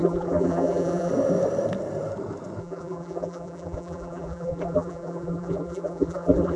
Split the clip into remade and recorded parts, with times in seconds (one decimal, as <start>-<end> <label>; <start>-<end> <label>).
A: 0.0-1.1 remade; 1.1-2.6 recorded; 2.6-6.6 remade